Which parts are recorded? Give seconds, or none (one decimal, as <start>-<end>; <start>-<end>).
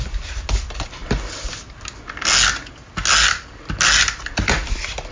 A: 0.0-5.1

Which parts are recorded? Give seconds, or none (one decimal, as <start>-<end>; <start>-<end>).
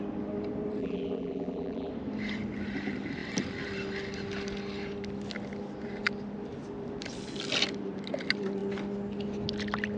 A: 0.0-0.8; 1.9-10.0